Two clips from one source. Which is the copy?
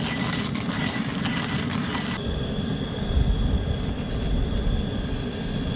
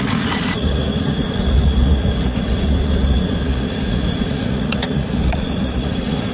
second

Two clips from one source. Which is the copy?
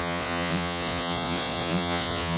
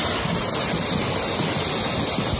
first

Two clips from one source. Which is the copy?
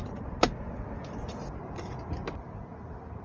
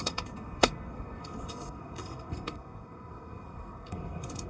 second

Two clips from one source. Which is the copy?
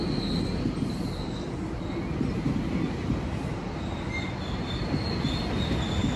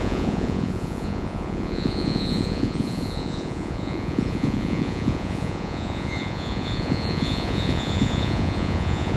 second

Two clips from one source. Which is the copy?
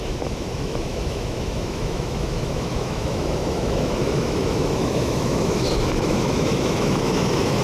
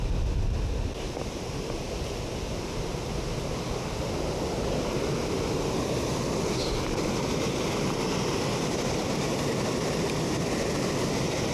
first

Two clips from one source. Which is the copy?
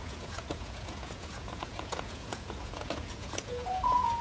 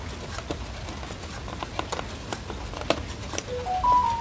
first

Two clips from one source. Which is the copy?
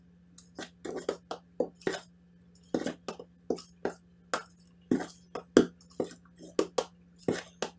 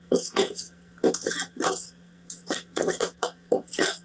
second